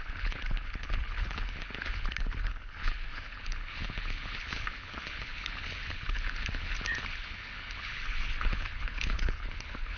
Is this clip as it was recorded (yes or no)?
no